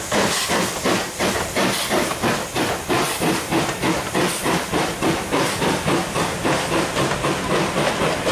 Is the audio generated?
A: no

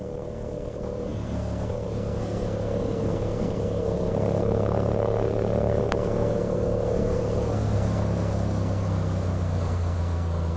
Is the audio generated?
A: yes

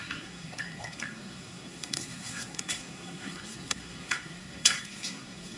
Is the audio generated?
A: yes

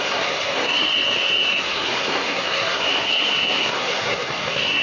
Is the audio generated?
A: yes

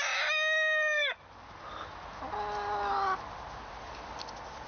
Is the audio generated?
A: no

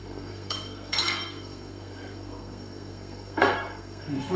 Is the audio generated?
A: yes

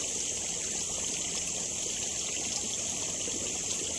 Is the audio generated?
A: no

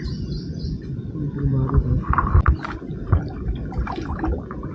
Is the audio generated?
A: no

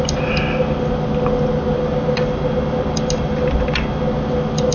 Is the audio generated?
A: no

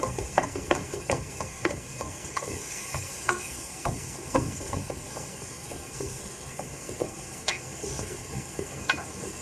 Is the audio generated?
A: yes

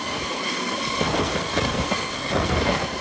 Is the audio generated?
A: yes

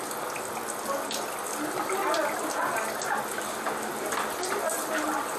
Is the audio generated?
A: no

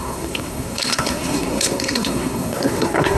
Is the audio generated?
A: yes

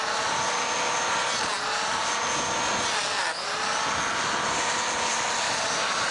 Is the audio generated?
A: no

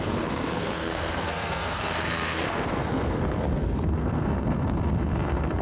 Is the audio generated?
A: yes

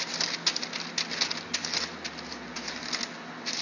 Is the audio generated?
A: no